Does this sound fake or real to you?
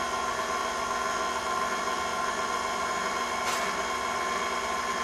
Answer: real